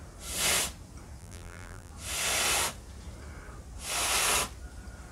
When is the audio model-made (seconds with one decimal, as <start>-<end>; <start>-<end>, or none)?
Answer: 1.2-1.9